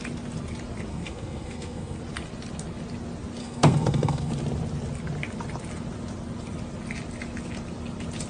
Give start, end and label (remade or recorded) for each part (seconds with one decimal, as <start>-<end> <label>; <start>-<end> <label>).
0.0-0.9 recorded; 0.9-2.0 remade; 2.0-3.4 recorded; 3.4-4.3 remade; 4.3-8.3 recorded